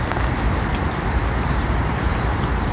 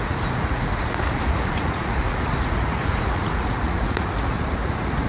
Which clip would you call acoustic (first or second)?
first